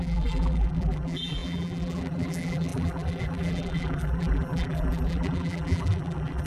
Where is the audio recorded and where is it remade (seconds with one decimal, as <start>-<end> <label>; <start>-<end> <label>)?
0.0-6.5 remade